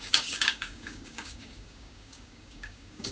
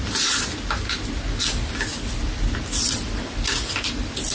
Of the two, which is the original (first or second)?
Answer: second